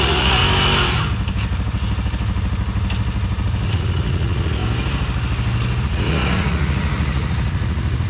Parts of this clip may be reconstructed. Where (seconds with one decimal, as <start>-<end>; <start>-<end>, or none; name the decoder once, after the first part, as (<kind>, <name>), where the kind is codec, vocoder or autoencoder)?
0.0-0.4 (vocoder, Vocos); 3.7-4.6; 5.8-8.1